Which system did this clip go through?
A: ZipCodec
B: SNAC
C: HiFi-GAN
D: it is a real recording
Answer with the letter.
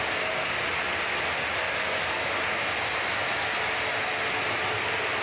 D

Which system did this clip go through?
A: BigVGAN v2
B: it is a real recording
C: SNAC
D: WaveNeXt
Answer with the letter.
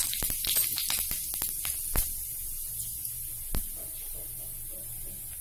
B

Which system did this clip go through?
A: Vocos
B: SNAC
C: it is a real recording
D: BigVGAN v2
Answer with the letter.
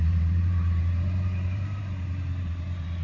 D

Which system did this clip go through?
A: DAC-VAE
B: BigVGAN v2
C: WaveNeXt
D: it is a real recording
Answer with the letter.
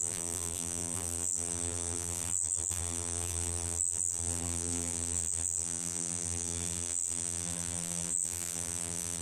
B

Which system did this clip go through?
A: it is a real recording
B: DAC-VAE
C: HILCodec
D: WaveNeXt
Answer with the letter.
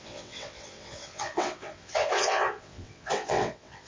D